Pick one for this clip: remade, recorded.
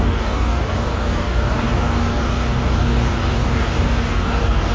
remade